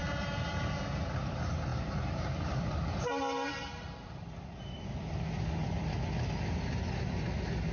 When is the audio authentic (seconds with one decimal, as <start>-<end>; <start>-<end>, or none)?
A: 0.5-1.7; 4.9-7.7